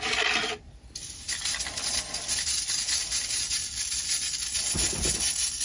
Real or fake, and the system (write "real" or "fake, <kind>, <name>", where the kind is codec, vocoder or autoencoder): real